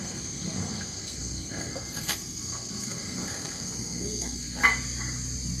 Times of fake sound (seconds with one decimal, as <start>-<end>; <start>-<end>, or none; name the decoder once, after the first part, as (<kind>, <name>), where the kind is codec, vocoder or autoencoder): 0.0-4.6 (codec, SNAC)